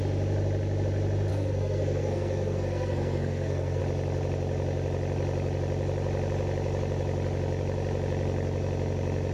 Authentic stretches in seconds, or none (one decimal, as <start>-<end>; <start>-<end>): 0.0-1.3; 3.8-9.3